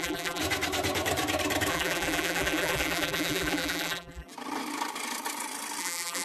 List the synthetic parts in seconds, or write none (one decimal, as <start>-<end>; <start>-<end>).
0.0-0.4; 1.7-4.3; 5.8-6.2